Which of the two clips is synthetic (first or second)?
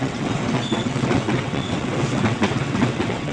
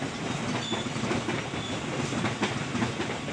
first